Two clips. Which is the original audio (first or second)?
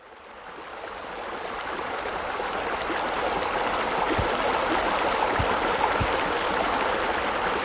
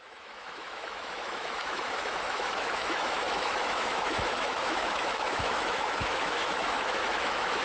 first